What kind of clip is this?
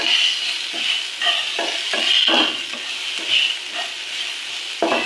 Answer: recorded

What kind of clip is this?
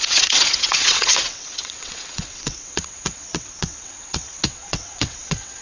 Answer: remade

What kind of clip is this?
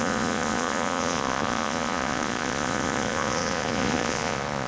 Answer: remade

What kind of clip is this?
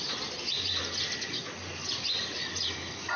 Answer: recorded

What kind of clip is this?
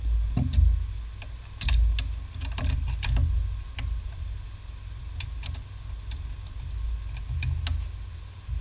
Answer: recorded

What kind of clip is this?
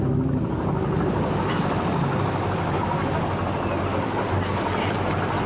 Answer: recorded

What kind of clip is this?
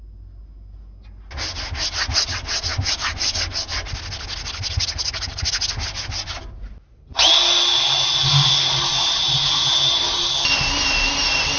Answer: recorded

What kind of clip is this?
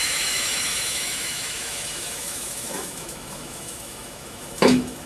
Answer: remade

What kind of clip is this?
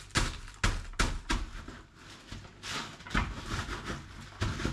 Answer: recorded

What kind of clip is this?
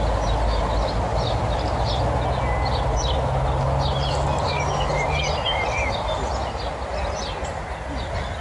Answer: recorded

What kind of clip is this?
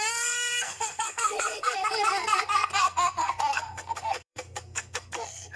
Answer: remade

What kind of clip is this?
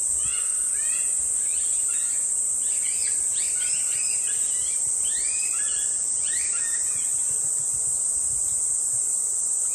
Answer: recorded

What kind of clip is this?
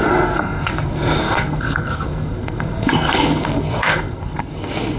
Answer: remade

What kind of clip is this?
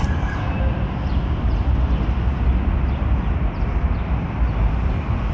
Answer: recorded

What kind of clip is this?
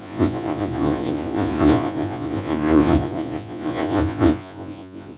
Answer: remade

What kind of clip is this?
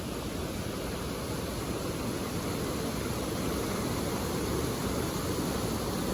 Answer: recorded